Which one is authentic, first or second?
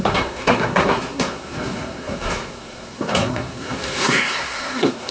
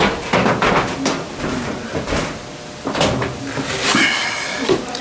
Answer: second